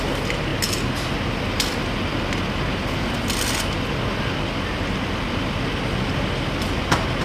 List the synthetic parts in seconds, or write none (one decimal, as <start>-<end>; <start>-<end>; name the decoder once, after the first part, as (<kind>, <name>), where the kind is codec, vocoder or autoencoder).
none